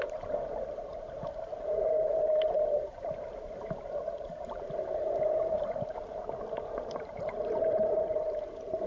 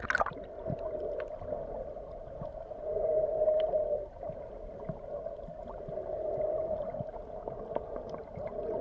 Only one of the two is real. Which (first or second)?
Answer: second